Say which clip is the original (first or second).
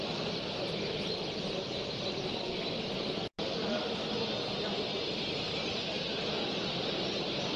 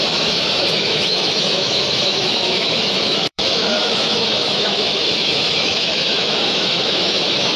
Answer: first